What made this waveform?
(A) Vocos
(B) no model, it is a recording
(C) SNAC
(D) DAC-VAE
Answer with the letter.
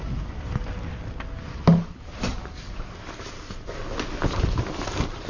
B